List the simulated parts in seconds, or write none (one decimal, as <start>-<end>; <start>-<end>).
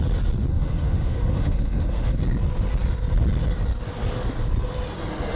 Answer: 0.5-2.2